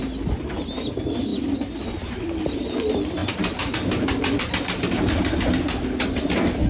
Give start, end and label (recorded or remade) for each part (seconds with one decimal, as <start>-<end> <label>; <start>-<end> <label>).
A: 0.0-6.7 recorded